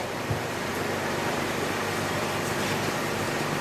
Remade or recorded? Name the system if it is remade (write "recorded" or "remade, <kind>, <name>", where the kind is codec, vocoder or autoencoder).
remade, vocoder, BigVGAN v2